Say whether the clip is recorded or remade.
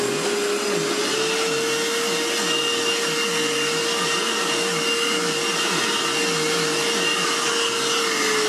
recorded